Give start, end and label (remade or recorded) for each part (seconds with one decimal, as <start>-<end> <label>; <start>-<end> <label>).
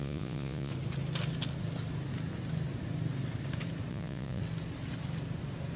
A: 0.0-0.7 remade; 0.7-3.9 recorded; 3.9-4.4 remade; 4.4-5.8 recorded